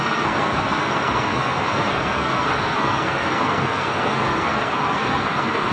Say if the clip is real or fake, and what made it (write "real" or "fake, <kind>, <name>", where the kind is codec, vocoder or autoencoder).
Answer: fake, codec, SNAC